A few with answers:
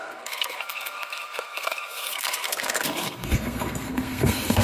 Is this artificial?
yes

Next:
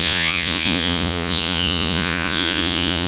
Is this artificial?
yes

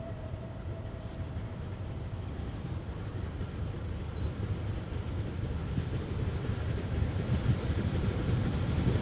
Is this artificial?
yes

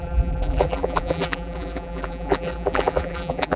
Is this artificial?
yes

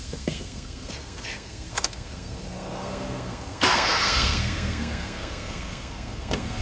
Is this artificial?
yes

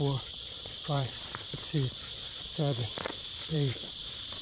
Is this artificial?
yes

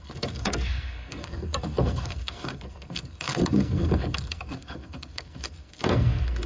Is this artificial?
yes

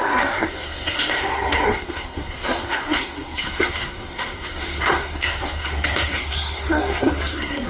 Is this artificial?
yes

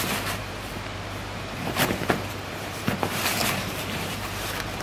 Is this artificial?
yes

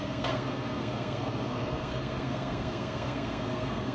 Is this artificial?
yes